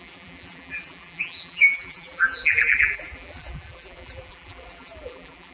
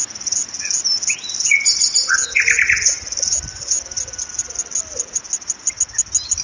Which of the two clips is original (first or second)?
second